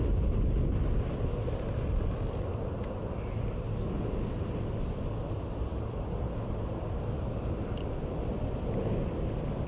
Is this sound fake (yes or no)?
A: no